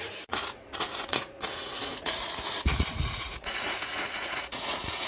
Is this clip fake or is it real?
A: fake